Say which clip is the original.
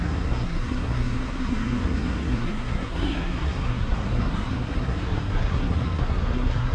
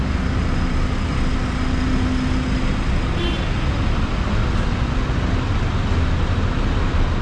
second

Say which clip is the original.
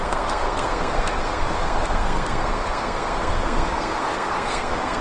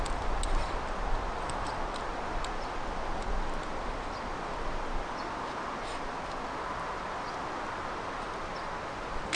second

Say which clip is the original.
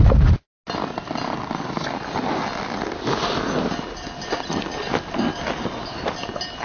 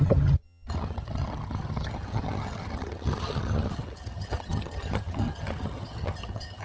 first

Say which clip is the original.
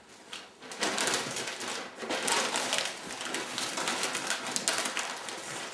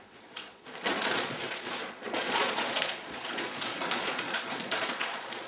first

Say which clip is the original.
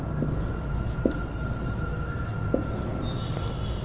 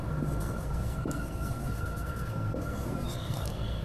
first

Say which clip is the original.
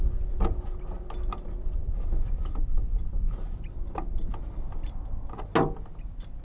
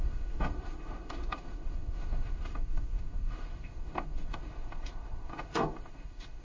first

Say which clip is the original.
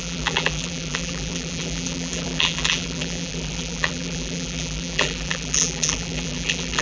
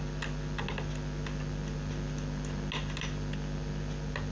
second